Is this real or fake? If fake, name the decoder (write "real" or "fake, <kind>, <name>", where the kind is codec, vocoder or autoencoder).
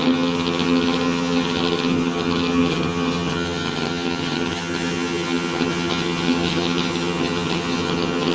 fake, vocoder, HiFi-GAN